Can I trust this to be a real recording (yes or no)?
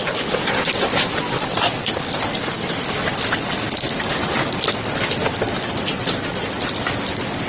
yes